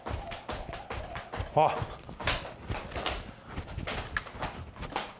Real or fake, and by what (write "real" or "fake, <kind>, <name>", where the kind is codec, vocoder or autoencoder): real